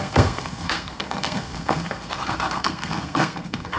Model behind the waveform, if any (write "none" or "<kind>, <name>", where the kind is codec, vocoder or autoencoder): codec, SNAC